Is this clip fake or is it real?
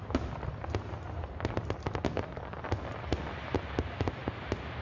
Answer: real